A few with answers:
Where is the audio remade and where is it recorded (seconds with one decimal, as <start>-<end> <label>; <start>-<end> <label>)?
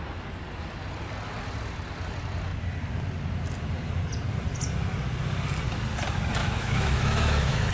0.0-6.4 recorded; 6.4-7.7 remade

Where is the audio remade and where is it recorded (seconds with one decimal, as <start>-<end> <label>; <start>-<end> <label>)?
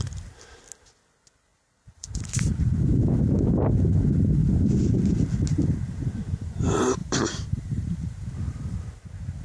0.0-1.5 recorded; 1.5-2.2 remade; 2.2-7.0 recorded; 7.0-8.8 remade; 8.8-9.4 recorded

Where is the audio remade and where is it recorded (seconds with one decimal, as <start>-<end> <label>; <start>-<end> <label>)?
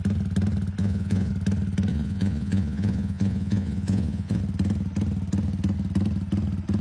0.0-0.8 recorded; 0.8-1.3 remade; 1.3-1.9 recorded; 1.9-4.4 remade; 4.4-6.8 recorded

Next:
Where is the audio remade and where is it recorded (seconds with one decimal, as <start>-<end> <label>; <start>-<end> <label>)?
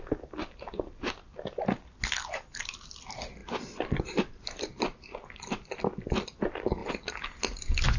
0.0-8.0 recorded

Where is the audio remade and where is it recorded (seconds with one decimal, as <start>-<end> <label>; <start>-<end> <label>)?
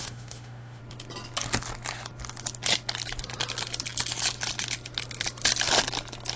0.0-0.8 remade; 0.8-6.4 recorded